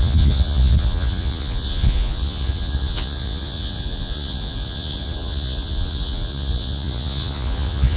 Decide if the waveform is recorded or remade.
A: remade